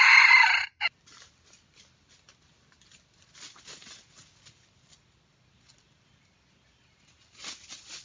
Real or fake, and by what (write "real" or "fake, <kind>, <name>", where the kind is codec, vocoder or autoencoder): fake, vocoder, BigVGAN v2